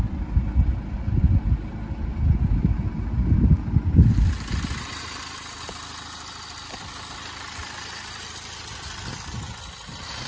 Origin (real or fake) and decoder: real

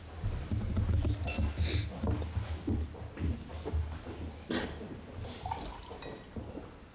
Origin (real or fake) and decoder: real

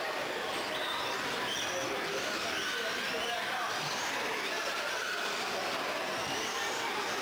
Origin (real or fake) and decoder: real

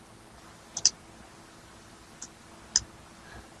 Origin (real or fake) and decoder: real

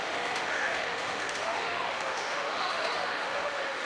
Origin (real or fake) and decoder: fake, autoencoder, DAC-VAE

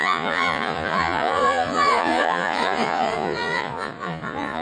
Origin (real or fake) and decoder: fake, vocoder, Vocos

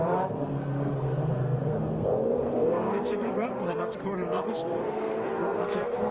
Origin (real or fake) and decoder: fake, codec, SNAC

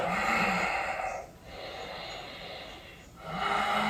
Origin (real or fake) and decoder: real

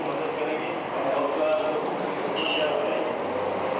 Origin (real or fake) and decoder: real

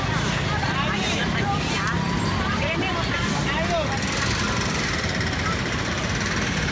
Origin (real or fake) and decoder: real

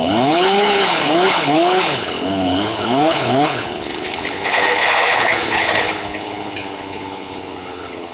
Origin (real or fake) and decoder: fake, codec, HILCodec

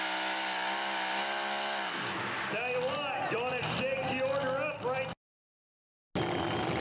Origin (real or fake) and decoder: real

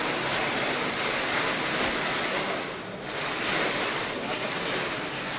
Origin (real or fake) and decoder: real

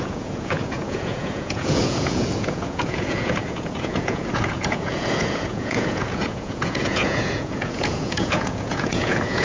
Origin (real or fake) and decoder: fake, vocoder, Vocos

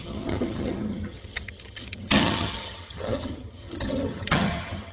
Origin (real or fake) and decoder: fake, vocoder, HiFi-GAN